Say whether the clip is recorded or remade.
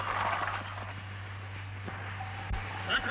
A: recorded